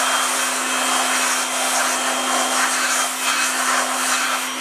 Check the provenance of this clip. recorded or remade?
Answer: recorded